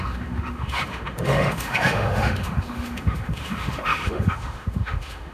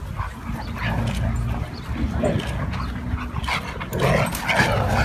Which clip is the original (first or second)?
second